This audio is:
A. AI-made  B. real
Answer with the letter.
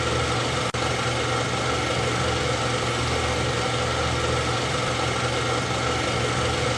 B